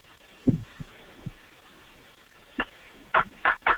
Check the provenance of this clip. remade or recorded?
remade